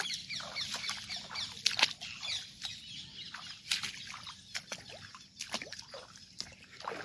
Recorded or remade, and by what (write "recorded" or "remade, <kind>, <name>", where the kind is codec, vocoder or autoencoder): recorded